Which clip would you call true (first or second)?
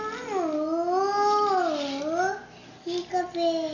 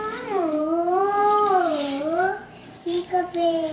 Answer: first